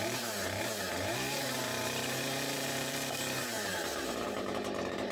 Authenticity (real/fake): fake